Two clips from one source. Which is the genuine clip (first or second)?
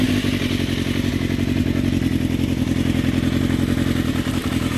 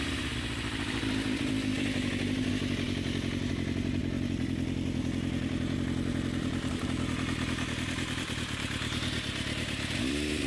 first